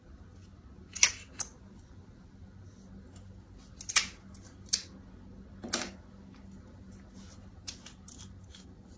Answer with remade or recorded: recorded